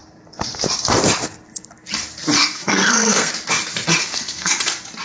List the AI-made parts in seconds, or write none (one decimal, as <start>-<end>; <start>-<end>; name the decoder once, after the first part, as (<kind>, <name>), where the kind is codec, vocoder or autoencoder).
2.4-3.3 (codec, SNAC); 4.0-4.6